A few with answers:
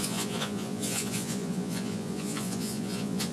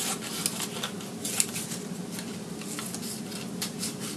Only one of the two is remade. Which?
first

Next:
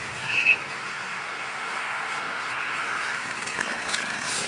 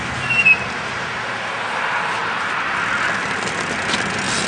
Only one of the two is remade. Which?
first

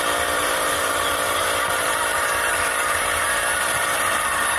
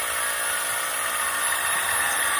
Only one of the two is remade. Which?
first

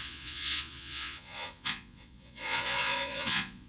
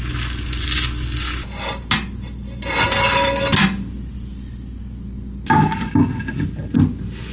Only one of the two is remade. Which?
first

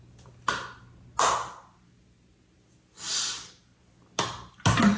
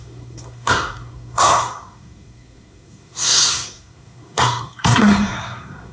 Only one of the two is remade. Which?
second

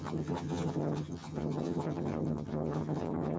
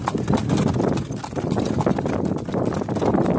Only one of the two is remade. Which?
first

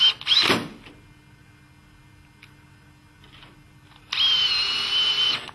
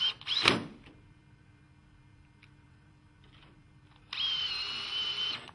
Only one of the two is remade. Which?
second